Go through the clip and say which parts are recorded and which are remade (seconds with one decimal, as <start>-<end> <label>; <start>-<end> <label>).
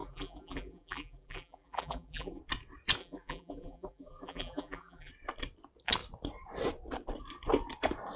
0.0-2.4 remade; 2.4-3.0 recorded; 3.0-5.1 remade; 5.1-8.2 recorded